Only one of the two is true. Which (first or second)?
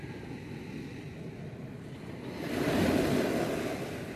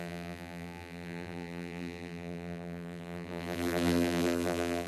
first